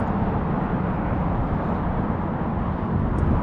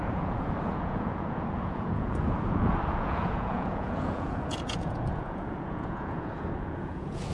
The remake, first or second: second